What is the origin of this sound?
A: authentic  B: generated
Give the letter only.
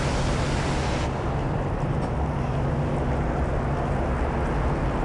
A